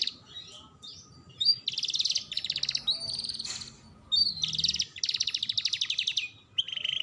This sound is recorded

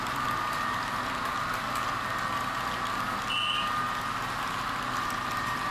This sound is recorded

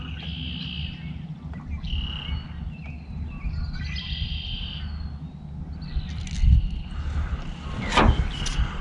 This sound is recorded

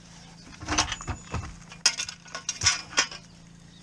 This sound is recorded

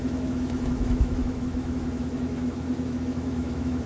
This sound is remade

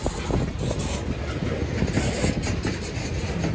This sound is recorded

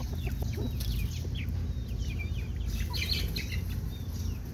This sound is recorded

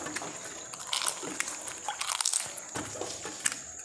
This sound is recorded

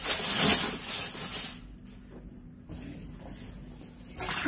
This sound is recorded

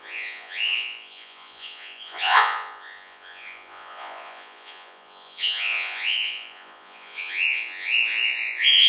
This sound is remade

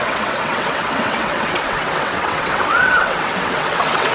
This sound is remade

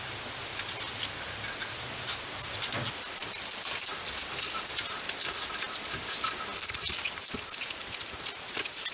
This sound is recorded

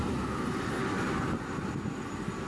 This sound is recorded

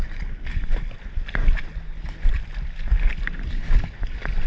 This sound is recorded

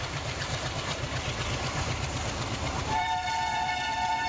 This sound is remade